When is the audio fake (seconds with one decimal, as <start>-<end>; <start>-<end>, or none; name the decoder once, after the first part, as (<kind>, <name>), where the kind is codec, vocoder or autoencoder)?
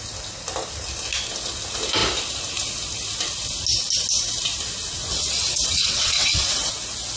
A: 5.1-6.7 (vocoder, WaveNeXt)